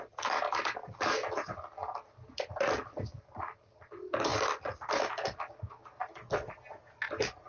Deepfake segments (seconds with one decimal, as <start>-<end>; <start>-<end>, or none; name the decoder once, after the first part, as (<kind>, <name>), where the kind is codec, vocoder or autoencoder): none